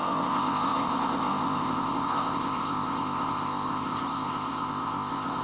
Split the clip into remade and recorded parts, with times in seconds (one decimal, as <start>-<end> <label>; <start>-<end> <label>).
0.0-5.4 remade

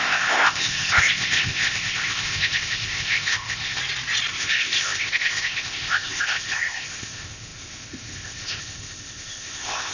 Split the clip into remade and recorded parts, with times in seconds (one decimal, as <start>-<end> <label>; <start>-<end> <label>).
0.0-3.8 remade; 3.8-4.3 recorded; 4.3-9.9 remade

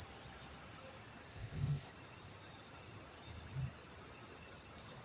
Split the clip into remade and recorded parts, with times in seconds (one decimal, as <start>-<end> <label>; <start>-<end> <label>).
0.0-1.3 recorded; 1.3-1.9 remade; 1.9-5.0 recorded

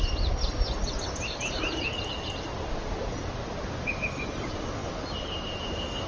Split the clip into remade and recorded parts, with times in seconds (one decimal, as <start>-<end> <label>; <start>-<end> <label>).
0.0-6.1 recorded